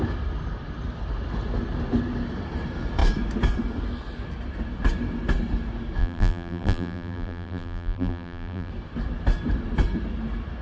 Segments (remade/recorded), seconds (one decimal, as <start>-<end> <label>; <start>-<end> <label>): 0.0-6.0 recorded; 6.0-8.7 remade; 8.7-10.6 recorded